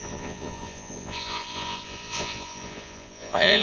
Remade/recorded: remade